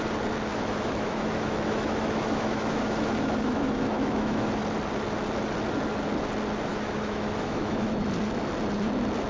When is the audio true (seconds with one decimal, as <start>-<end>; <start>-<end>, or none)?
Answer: 0.0-0.5; 4.5-6.7; 7.9-9.3